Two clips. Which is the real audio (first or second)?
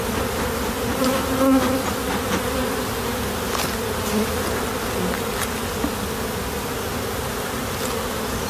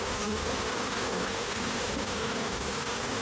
first